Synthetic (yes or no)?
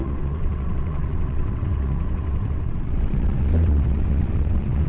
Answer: yes